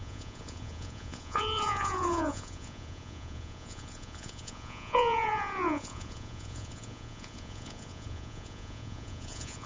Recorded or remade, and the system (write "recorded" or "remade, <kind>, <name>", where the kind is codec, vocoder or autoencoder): remade, vocoder, Vocos